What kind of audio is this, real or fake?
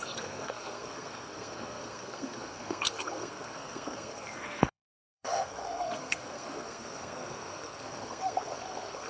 fake